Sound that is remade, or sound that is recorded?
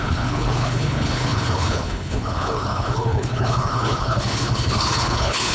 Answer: remade